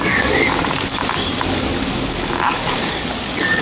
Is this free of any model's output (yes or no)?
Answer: no